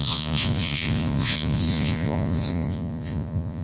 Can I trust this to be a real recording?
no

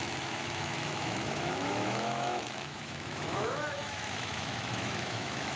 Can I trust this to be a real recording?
no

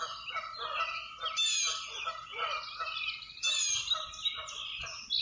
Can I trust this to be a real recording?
yes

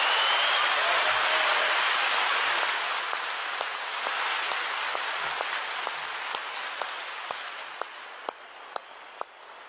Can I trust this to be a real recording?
yes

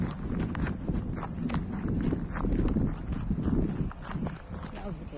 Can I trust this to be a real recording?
yes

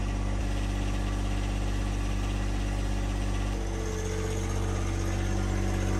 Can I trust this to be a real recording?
yes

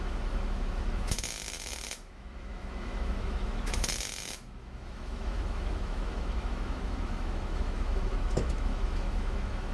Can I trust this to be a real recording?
no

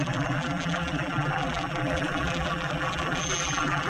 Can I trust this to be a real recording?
no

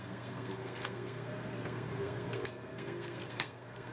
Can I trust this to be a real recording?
no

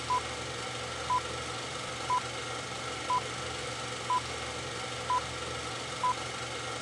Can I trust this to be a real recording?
yes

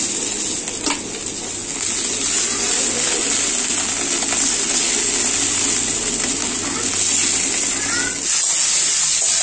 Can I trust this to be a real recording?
yes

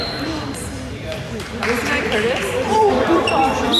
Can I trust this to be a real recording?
no